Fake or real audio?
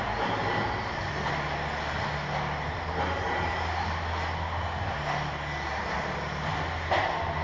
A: real